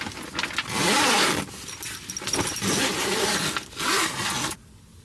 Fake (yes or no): no